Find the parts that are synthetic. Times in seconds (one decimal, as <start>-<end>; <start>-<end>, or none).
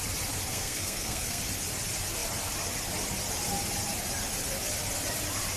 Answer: 0.5-1.4